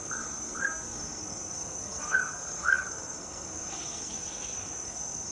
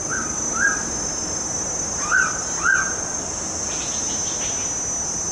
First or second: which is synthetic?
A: first